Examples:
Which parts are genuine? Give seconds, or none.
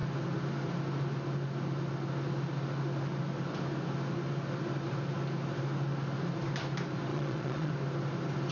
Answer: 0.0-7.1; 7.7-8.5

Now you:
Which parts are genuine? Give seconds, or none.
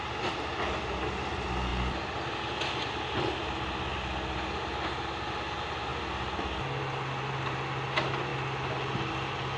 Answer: 0.0-9.6